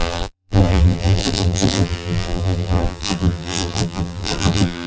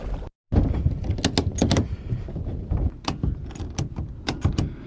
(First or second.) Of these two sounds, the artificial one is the first